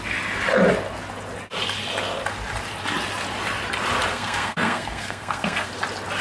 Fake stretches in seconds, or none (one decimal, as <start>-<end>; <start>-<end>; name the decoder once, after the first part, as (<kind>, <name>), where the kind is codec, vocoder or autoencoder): 4.1-5.7 (codec, SNAC)